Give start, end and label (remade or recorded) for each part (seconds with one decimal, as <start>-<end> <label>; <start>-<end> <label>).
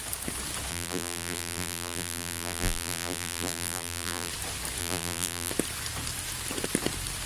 0.0-0.7 recorded; 0.7-4.3 remade; 4.3-4.8 recorded; 4.8-5.5 remade; 5.5-7.3 recorded